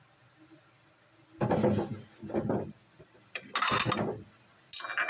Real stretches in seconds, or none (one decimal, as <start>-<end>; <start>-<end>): 0.0-5.1